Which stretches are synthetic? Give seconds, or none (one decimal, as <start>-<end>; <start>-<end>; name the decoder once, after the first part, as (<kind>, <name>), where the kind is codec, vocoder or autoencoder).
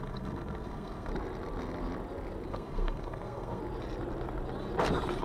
0.0-1.1 (codec, SNAC); 2.5-3.6